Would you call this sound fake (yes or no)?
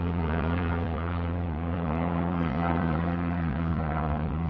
yes